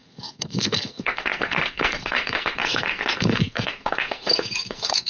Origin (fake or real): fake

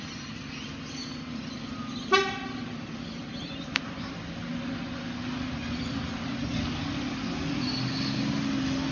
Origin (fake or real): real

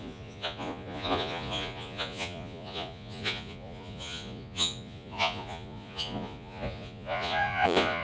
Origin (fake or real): fake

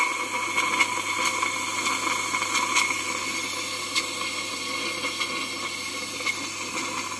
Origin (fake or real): real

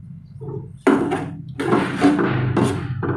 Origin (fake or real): real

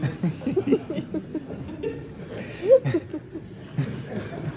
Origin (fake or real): real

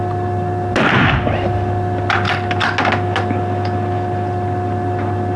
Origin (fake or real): real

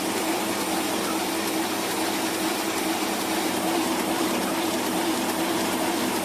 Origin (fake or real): real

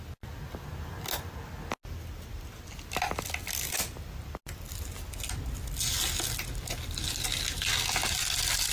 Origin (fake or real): real